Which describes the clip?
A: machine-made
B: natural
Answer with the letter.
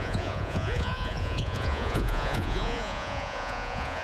A